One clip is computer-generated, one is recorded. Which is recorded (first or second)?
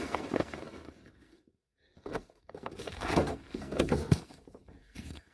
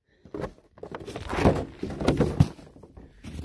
second